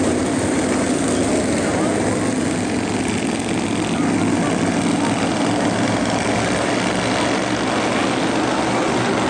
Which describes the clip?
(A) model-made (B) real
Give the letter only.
B